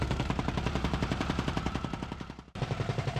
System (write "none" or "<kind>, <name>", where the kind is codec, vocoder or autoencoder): vocoder, BigVGAN v2